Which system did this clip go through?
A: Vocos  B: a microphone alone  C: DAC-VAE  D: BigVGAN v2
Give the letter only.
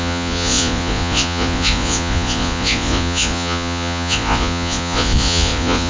A